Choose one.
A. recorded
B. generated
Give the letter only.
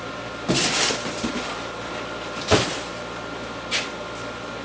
A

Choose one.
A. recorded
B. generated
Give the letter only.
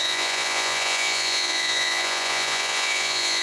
B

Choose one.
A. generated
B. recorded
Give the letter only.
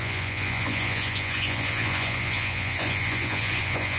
A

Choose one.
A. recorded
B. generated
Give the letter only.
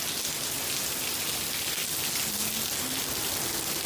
A